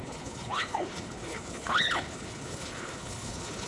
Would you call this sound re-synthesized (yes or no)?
yes